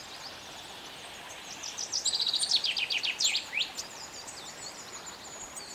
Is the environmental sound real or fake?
real